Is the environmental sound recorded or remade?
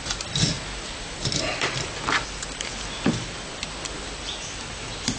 recorded